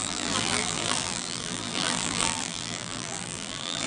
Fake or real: fake